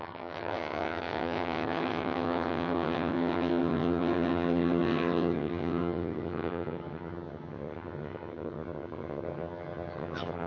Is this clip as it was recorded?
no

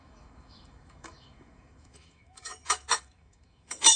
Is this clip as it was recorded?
no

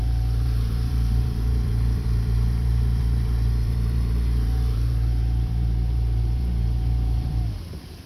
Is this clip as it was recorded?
no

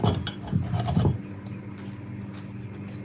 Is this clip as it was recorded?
yes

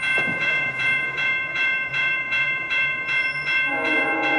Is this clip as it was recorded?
no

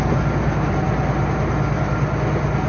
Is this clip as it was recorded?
yes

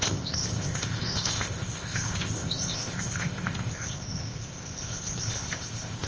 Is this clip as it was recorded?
no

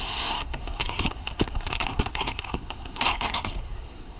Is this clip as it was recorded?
no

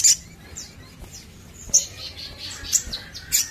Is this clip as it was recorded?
yes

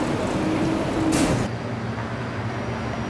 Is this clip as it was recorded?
yes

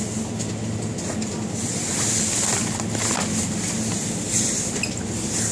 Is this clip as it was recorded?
yes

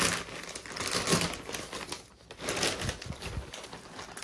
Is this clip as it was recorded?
yes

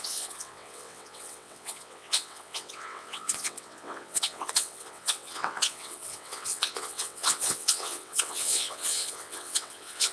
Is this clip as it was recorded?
no